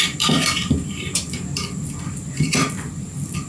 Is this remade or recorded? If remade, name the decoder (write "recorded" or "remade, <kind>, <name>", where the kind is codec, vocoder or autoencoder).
remade, vocoder, BigVGAN v2